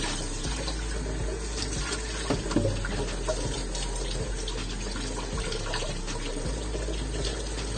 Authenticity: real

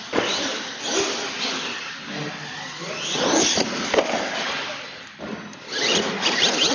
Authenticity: real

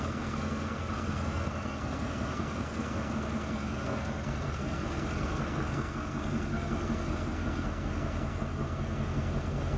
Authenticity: fake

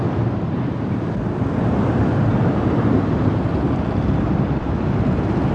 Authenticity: fake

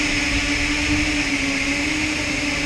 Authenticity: real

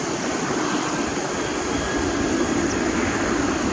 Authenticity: real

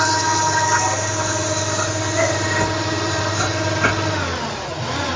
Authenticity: real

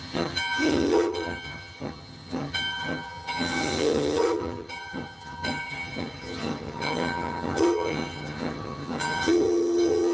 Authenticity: fake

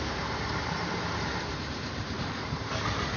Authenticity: fake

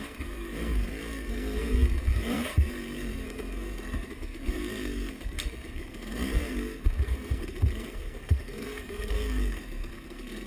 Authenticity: fake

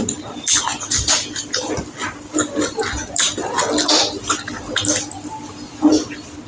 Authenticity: real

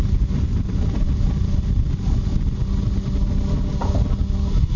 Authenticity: real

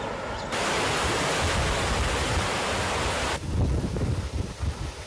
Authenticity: real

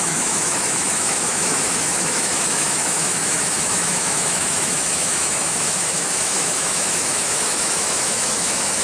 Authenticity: fake